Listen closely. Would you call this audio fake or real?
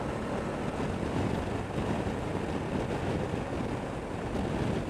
real